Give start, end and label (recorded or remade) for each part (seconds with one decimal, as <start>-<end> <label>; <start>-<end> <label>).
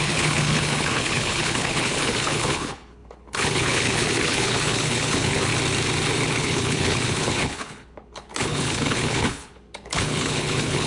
0.0-5.5 remade; 5.5-6.4 recorded; 6.4-10.9 remade